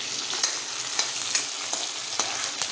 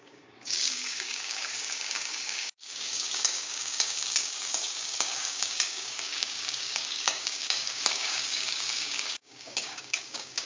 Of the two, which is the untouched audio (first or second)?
first